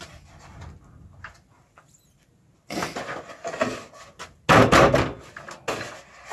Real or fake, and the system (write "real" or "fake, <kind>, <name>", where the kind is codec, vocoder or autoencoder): real